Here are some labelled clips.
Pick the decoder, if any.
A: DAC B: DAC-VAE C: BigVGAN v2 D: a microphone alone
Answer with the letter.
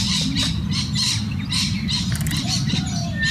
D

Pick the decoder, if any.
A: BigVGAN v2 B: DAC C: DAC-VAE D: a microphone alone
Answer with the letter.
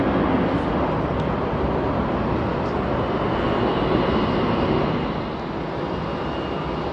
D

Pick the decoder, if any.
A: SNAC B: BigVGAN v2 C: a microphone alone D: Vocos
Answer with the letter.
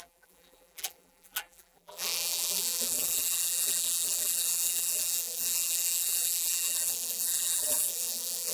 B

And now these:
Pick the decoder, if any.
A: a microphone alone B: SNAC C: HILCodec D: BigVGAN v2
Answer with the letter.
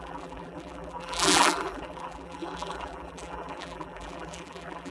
D